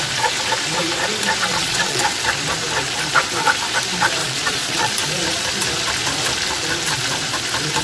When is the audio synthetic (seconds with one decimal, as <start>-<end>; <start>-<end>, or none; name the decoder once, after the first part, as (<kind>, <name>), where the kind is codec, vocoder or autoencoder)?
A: 1.5-2.0 (vocoder, Vocos); 4.2-4.9